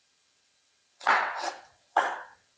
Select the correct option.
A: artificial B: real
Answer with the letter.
A